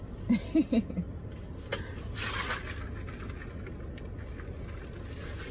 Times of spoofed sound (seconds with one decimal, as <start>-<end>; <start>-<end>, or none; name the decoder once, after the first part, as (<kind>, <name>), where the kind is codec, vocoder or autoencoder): none